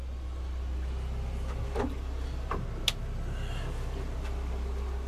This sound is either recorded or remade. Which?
recorded